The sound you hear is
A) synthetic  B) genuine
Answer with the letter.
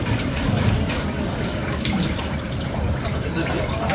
A